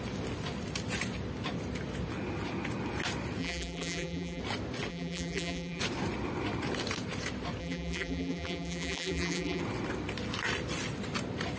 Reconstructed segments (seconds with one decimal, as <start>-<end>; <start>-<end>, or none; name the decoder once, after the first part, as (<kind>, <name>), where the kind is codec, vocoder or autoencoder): 3.4-4.4 (vocoder, BigVGAN v2); 4.9-5.8; 7.6-9.6